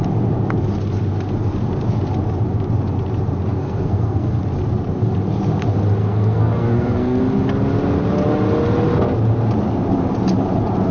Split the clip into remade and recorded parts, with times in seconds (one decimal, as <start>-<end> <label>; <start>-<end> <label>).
0.0-3.5 recorded; 3.5-4.4 remade; 4.4-6.0 recorded; 6.0-7.2 remade; 7.2-10.9 recorded